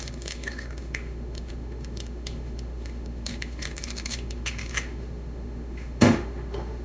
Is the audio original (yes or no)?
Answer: no